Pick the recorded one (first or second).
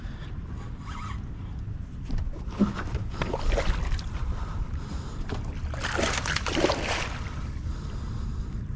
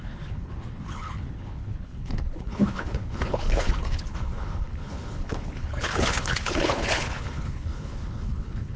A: first